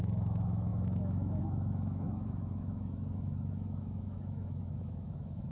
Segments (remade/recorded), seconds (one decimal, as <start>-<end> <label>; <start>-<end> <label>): 0.0-5.5 remade